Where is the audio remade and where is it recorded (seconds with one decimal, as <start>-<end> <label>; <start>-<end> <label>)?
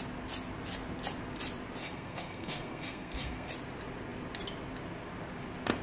0.0-1.8 recorded; 1.8-3.5 remade; 3.5-5.8 recorded